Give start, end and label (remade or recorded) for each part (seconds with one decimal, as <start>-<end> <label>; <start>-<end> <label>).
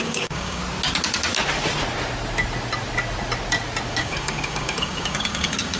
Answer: 0.0-0.6 remade; 0.6-3.9 recorded; 3.9-5.8 remade